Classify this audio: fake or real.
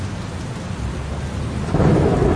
real